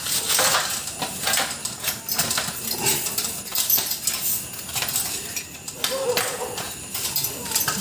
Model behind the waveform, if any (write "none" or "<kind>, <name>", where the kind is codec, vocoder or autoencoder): none